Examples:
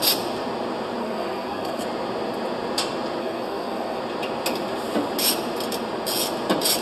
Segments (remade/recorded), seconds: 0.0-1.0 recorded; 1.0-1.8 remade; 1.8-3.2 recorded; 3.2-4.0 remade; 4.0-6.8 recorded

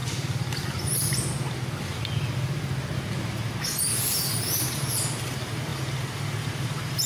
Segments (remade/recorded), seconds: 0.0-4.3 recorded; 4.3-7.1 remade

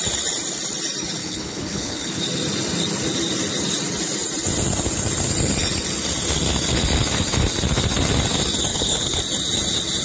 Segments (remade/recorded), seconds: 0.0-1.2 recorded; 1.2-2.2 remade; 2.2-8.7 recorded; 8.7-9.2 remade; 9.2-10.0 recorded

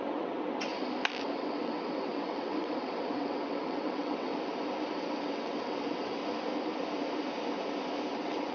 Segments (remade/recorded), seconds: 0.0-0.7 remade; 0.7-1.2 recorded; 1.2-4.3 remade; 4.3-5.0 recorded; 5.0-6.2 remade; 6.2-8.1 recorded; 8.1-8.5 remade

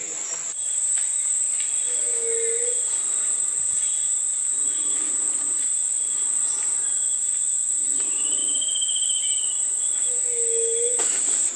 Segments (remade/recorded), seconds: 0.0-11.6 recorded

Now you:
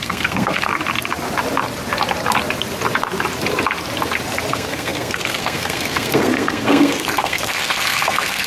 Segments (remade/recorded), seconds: 0.0-0.7 remade; 0.7-4.5 recorded; 4.5-8.5 remade